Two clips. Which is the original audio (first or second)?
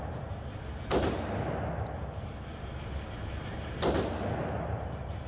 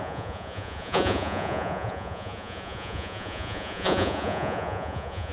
first